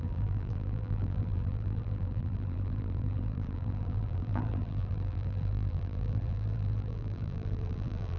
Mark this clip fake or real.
fake